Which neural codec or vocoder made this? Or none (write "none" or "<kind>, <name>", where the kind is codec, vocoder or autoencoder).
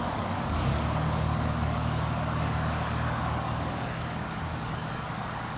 codec, DAC